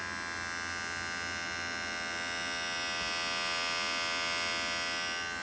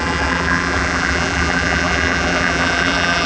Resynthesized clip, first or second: second